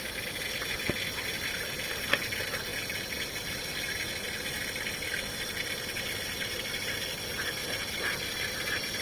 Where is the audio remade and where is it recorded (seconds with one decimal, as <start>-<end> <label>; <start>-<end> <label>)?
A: 0.0-9.0 recorded